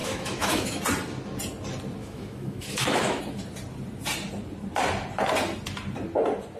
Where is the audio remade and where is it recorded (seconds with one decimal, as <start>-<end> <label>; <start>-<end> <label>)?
0.0-0.8 remade; 0.8-2.0 recorded; 2.0-3.2 remade; 3.2-6.6 recorded